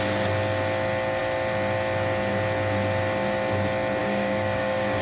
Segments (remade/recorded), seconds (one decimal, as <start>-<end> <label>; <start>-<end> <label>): 0.0-4.0 recorded; 4.0-5.0 remade